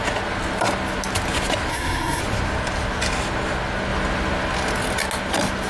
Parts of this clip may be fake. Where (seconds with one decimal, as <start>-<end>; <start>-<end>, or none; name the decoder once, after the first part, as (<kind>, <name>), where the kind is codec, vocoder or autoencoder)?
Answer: 1.7-2.2 (codec, SNAC)